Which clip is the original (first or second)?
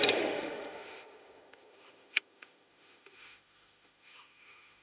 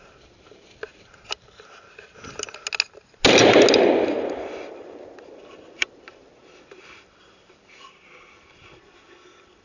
second